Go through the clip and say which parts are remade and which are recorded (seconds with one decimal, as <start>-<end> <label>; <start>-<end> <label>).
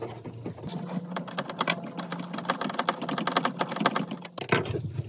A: 0.0-0.7 recorded; 0.7-1.3 remade; 1.3-5.1 recorded